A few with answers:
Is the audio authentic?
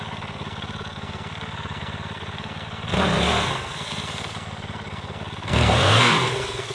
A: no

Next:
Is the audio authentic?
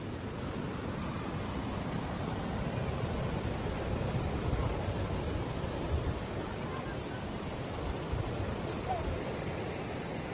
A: yes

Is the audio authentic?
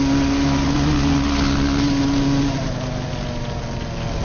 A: yes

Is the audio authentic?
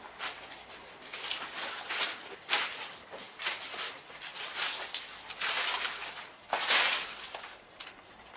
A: yes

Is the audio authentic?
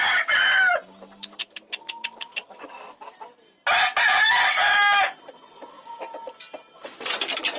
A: yes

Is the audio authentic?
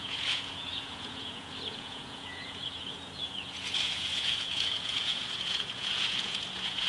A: no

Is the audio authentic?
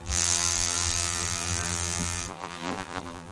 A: no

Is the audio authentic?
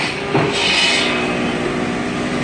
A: yes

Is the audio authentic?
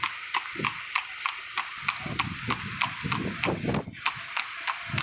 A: yes